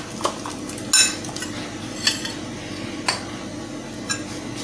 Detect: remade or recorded recorded